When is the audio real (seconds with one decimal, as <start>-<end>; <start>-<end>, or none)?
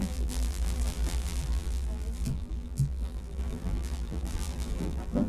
none